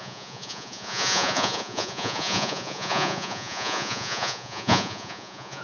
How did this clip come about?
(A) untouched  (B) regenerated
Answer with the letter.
B